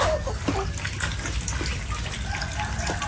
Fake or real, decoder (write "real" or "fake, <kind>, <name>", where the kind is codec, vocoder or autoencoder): real